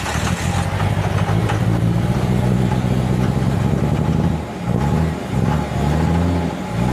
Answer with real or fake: real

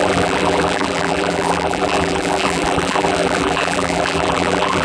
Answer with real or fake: fake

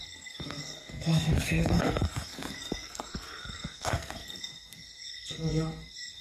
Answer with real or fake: fake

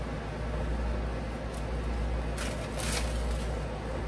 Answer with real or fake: real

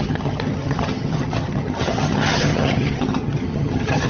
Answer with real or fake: fake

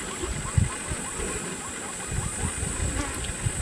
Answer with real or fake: real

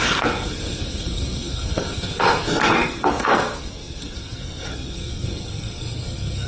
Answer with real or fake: fake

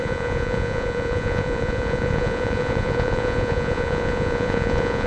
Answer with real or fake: fake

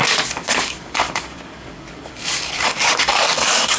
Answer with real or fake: fake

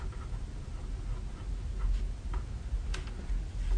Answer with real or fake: real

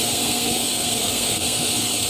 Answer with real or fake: fake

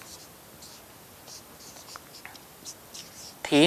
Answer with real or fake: real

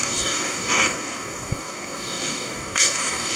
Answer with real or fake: fake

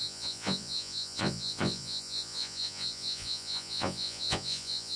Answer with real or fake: fake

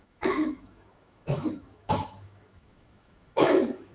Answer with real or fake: fake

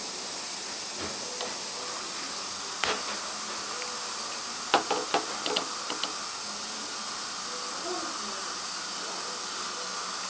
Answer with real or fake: real